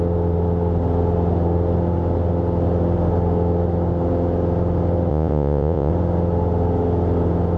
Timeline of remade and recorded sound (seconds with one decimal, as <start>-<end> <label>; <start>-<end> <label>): 0.0-5.1 recorded; 5.1-5.9 remade; 5.9-7.6 recorded